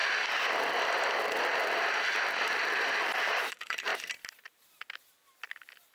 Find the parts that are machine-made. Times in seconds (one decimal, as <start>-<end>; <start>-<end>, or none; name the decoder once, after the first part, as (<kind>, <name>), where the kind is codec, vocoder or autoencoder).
3.5-3.9 (codec, DAC)